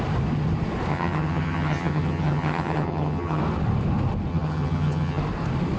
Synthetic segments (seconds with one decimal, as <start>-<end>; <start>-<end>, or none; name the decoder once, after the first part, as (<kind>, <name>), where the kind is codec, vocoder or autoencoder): 0.9-3.4 (vocoder, HiFi-GAN); 4.3-5.2